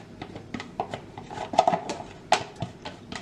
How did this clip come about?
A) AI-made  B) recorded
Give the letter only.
A